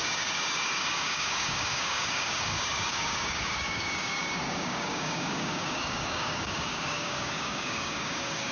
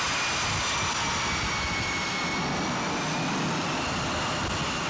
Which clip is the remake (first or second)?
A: first